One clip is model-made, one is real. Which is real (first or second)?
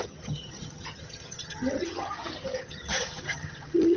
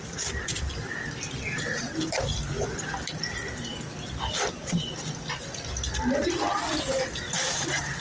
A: second